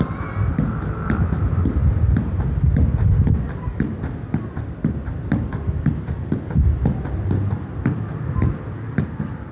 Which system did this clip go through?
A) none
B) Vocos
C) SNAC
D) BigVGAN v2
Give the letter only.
A